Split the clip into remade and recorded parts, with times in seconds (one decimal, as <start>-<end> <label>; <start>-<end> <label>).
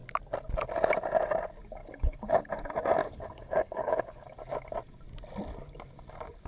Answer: 0.0-1.8 recorded; 1.8-2.5 remade; 2.5-3.0 recorded; 3.0-4.0 remade; 4.0-6.5 recorded